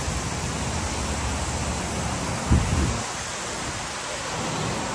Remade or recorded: recorded